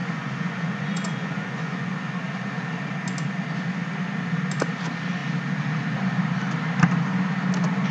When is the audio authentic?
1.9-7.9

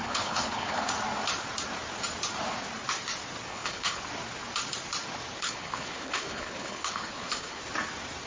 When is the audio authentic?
0.9-3.5; 4.0-5.4; 7.6-8.3

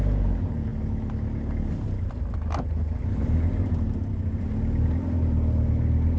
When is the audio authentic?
0.0-6.2